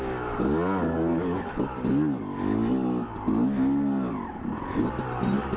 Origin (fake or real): real